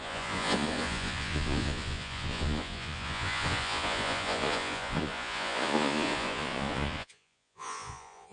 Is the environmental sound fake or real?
fake